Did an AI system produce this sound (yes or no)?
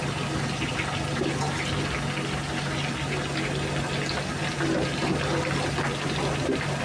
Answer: no